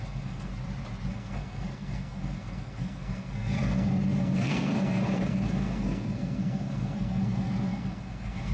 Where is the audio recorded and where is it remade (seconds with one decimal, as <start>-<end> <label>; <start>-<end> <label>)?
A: 0.0-0.5 remade; 0.5-1.1 recorded; 1.1-8.5 remade